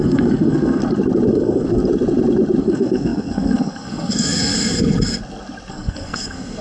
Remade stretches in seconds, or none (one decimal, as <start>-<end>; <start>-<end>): 0.0-0.8; 1.3-1.8; 2.6-4.5; 5.7-6.6